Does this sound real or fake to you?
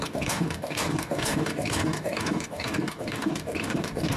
fake